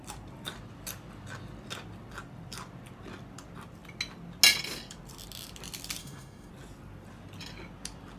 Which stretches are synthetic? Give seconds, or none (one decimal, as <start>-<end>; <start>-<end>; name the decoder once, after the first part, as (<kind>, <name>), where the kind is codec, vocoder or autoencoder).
6.0-6.5 (autoencoder, DAC-VAE)